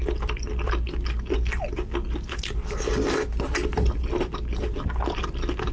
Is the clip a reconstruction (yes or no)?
no